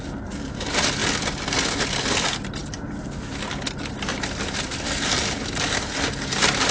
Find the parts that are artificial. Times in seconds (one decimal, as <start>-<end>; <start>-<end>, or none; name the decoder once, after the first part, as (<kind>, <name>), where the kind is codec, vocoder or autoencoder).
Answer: 2.6-3.3 (vocoder, BigVGAN v2)

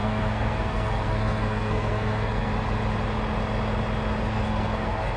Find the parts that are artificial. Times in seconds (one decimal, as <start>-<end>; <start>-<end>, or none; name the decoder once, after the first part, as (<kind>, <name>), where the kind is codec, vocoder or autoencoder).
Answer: 0.0-2.5 (codec, SNAC); 4.3-5.2

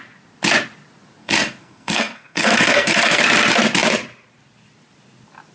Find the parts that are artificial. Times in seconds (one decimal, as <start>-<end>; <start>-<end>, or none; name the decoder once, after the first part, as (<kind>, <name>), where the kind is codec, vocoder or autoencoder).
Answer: 1.2-3.2 (codec, SNAC)